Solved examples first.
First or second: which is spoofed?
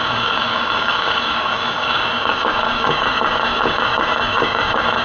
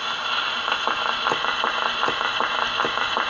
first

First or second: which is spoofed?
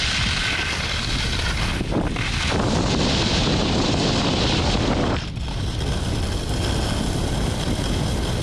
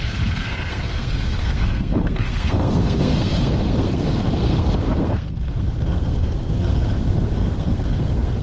second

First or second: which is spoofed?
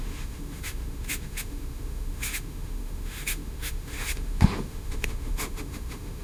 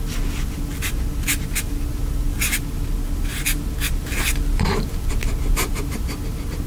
first